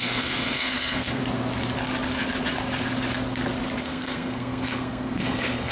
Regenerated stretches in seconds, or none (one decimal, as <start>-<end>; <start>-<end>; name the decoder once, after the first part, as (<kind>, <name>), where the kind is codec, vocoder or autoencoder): 0.0-1.2 (codec, SNAC); 3.8-5.7